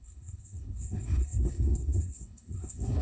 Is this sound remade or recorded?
remade